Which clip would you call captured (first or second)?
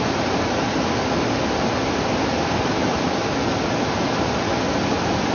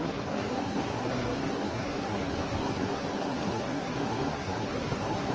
first